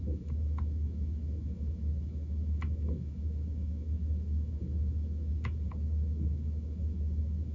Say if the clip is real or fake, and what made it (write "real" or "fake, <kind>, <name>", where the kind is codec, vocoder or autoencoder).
fake, autoencoder, DAC-VAE